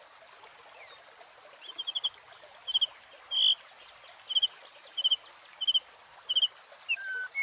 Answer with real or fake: real